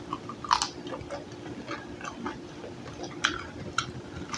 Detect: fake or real real